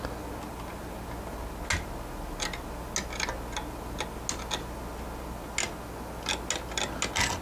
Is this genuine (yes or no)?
yes